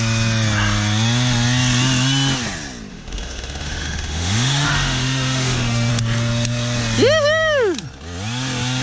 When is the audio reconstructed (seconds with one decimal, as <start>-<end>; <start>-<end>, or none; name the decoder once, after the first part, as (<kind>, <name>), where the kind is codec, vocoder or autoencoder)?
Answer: 2.9-5.9 (autoencoder, DAC-VAE)